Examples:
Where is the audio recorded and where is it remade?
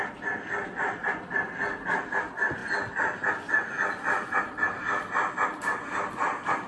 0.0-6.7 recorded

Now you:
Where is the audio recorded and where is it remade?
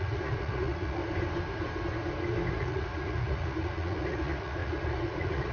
0.0-1.0 remade; 1.0-2.5 recorded; 2.5-5.5 remade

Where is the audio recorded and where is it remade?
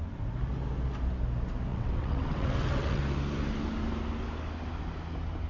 0.0-1.7 recorded; 1.7-3.0 remade; 3.0-5.5 recorded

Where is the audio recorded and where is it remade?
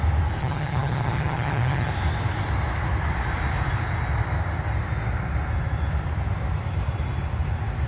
0.0-0.4 recorded; 0.4-1.9 remade; 1.9-7.9 recorded